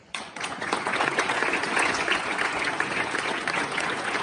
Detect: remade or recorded remade